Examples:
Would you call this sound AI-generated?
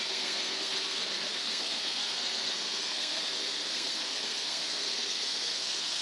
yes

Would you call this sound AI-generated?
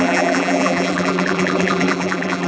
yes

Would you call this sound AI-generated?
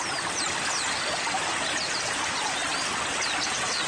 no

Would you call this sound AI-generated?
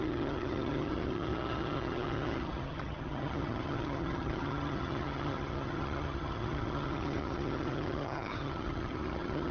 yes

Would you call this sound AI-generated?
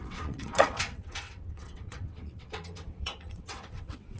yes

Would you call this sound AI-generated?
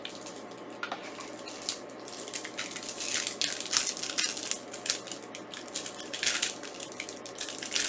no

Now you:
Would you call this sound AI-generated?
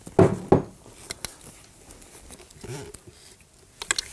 no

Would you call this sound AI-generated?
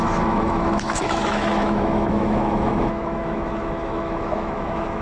yes